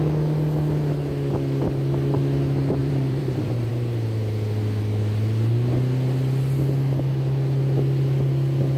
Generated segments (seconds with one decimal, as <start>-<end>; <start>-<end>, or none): 2.8-3.7